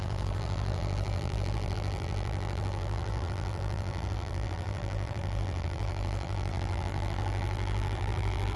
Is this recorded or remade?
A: remade